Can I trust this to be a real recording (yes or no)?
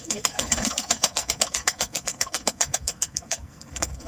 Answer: no